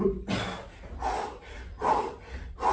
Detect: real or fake real